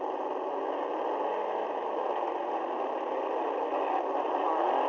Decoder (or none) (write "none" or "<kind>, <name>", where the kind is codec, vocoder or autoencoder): none